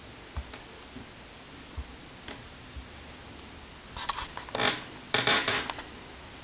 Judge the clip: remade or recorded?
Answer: recorded